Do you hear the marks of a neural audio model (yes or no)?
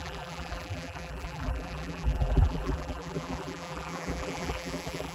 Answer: yes